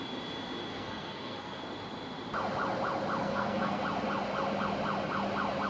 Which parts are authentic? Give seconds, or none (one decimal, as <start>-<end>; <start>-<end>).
0.0-0.7; 1.7-3.2; 3.8-5.7